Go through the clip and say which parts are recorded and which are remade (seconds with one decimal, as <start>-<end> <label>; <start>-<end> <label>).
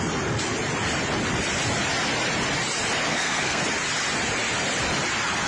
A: 0.0-3.1 recorded; 3.1-3.6 remade; 3.6-5.5 recorded